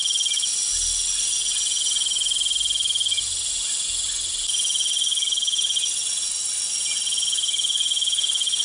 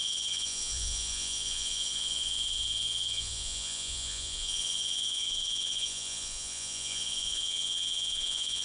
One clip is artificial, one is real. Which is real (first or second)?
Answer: first